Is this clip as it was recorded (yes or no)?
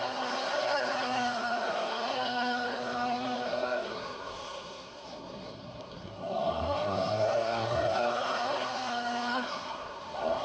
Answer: no